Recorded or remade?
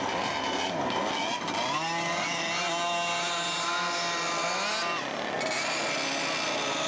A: recorded